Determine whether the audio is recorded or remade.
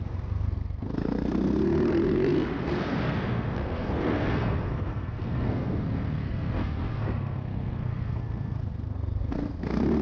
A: remade